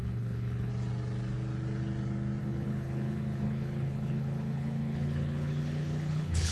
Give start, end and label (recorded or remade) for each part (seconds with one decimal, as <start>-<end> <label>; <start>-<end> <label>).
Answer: 0.0-0.7 remade; 0.7-2.4 recorded; 2.4-6.5 remade